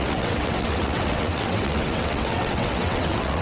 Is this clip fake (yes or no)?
yes